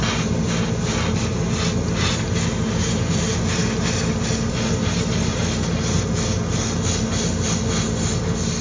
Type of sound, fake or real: real